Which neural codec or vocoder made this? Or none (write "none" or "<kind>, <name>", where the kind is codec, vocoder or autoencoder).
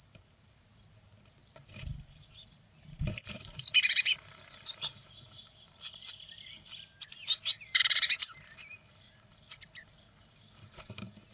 vocoder, BigVGAN v2